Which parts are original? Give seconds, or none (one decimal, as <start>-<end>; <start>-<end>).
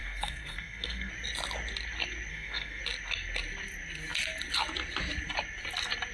1.1-2.3; 2.8-6.1